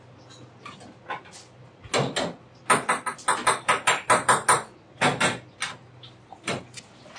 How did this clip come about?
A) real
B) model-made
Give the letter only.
A